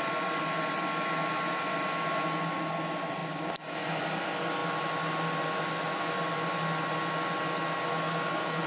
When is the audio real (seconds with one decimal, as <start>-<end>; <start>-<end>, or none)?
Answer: 0.0-3.2; 4.0-4.6; 6.2-8.7